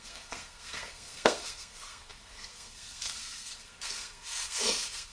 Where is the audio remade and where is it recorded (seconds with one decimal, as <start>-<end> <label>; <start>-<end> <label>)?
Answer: 0.0-5.1 remade